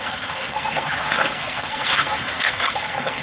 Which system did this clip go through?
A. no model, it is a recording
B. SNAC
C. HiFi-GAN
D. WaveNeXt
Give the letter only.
B